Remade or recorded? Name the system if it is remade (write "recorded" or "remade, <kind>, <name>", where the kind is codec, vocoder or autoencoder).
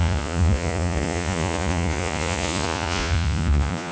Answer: remade, vocoder, Vocos